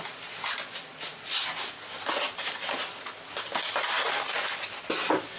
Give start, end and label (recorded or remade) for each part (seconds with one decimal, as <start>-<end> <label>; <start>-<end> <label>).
0.0-5.4 recorded